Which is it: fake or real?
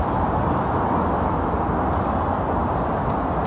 real